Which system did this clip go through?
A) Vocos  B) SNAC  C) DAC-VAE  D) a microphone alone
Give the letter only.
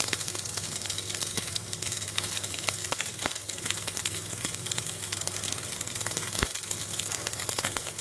B